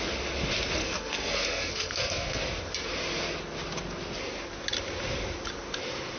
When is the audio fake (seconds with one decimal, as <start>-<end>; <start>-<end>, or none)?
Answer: 0.8-2.4

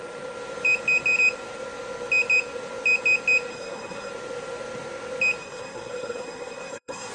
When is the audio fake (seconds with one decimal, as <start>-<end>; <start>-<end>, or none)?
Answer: 3.5-4.1; 5.4-7.1

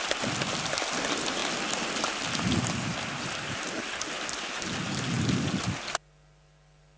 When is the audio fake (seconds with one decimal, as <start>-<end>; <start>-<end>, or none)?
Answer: none

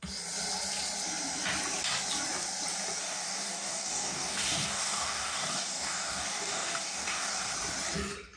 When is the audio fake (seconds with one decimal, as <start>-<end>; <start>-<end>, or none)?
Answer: 3.0-7.5

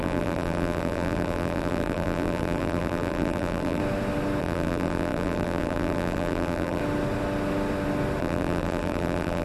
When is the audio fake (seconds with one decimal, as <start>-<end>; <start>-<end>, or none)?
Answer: 0.0-3.8; 4.4-6.8; 8.2-9.4